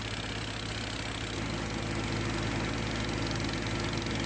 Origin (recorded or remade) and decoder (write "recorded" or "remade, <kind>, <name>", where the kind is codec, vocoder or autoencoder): recorded